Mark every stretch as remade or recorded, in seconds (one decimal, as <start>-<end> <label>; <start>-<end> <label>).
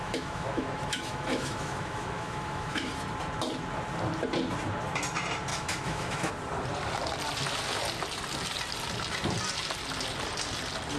0.0-2.9 remade; 2.9-5.5 recorded; 5.5-6.3 remade; 6.3-11.0 recorded